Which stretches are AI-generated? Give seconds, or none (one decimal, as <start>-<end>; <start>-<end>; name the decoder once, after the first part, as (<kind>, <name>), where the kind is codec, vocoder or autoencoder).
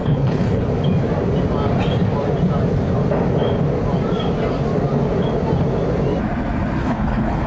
0.0-0.6 (codec, HILCodec); 6.8-7.5